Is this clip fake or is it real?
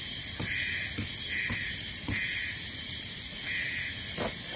real